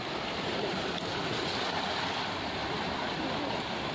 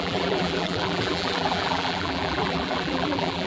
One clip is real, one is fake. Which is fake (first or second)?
second